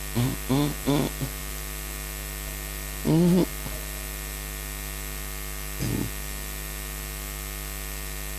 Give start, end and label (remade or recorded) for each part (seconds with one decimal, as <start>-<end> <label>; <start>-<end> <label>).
0.0-8.4 recorded